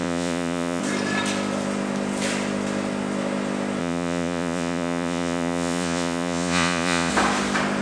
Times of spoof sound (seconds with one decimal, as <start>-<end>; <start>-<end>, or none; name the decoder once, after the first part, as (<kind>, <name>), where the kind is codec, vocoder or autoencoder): 0.0-0.8 (vocoder, Vocos); 3.8-7.1